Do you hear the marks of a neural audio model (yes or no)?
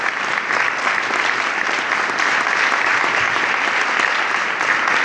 no